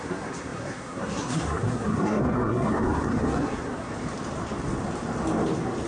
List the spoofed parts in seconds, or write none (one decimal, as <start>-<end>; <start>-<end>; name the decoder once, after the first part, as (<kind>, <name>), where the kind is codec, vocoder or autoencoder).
0.0-3.9 (codec, SNAC)

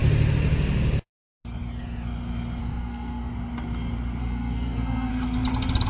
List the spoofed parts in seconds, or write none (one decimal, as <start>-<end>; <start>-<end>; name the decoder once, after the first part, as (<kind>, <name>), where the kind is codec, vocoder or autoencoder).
2.6-3.3 (codec, SNAC); 4.2-5.1